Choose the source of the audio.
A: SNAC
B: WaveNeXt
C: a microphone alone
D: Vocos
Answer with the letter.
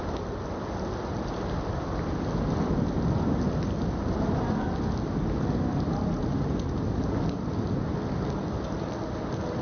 C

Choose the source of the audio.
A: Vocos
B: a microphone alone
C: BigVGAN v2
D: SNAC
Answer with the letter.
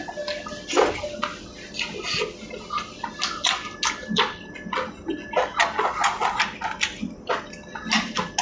B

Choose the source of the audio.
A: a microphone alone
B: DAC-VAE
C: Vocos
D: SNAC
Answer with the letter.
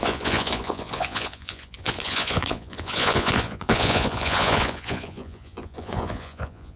C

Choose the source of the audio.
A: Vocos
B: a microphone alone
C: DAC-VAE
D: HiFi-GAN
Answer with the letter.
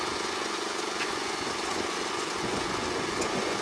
A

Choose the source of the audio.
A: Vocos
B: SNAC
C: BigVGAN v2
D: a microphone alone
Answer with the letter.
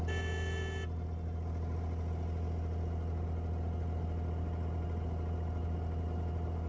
D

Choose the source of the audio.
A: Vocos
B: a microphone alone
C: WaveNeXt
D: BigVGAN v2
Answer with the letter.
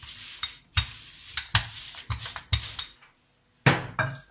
B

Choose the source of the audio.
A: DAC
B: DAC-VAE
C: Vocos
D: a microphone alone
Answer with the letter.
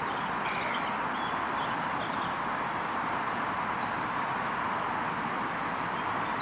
D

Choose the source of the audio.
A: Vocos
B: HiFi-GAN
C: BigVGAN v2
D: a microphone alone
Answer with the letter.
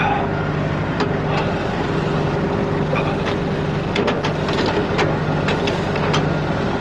D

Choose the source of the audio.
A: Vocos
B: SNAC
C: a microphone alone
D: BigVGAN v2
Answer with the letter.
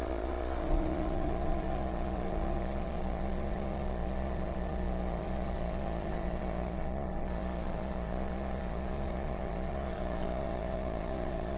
A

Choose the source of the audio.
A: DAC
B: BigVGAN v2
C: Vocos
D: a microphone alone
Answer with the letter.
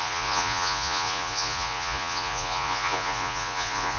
C